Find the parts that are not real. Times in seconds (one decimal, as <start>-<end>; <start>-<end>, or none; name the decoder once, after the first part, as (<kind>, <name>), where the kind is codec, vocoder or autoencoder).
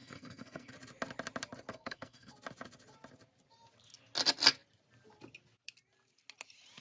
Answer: 0.0-0.7 (codec, SNAC); 1.7-2.3